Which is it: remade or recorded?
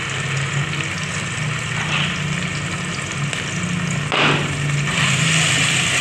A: recorded